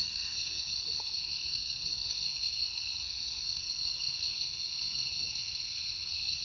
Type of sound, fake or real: fake